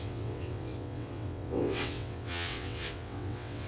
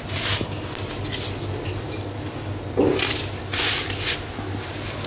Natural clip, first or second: second